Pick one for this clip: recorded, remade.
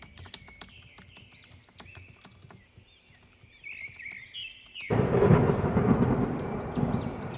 recorded